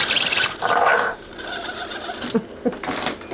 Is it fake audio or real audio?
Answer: real